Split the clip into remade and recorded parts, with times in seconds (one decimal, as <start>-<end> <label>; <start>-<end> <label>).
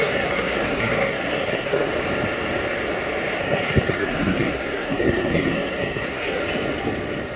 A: 0.0-1.9 remade; 1.9-3.4 recorded; 3.4-6.4 remade; 6.4-7.4 recorded